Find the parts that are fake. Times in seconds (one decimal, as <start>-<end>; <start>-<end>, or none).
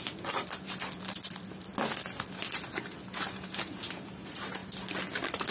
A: 0.0-1.7; 3.3-4.6